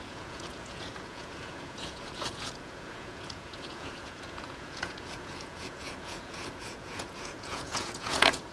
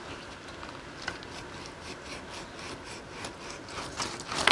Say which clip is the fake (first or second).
first